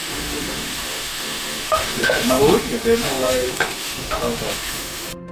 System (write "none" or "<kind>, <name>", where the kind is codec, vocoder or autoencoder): autoencoder, DAC-VAE